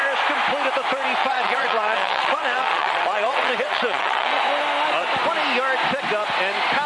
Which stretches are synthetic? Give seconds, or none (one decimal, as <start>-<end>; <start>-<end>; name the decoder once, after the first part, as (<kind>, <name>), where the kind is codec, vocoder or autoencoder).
1.2-4.4 (vocoder, WaveNeXt)